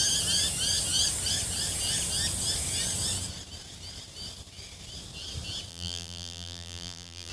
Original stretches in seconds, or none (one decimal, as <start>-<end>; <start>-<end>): 0.0-5.7